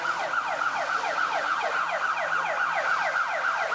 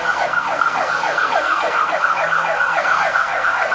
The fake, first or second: second